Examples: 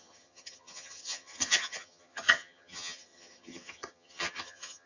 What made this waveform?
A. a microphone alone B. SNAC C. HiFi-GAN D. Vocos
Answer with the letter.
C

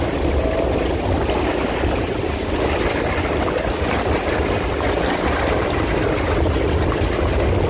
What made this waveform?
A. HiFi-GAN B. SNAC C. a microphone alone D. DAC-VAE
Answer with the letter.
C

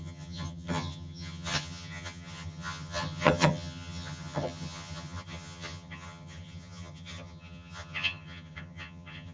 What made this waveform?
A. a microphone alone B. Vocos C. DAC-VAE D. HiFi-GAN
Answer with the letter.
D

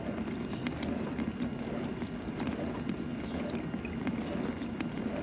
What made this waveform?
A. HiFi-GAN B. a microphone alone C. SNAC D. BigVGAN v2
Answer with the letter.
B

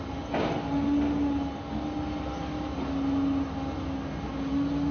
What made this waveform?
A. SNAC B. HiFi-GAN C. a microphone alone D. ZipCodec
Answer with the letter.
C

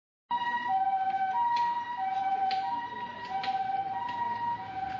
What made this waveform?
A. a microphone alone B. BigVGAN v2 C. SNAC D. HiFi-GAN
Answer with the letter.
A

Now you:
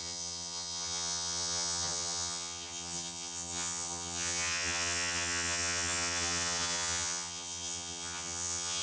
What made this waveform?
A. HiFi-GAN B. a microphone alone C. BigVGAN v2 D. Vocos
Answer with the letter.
A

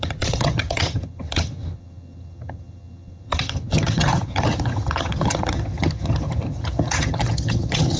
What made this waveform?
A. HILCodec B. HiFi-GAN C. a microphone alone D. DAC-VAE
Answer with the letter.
B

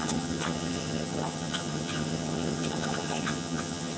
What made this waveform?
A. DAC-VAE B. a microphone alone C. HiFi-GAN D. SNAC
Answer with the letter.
C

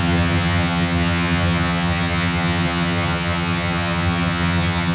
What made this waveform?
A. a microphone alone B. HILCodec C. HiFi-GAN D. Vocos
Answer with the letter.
C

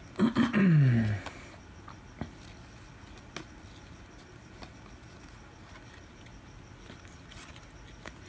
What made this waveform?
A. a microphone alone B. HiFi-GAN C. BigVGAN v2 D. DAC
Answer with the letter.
A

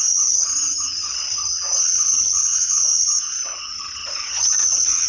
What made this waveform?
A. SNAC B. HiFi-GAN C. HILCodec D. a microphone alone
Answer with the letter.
B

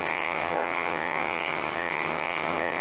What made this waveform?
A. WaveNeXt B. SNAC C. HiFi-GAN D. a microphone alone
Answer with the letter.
C